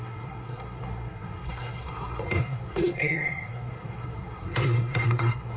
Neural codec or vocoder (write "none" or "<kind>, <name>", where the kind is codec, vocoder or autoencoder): codec, SNAC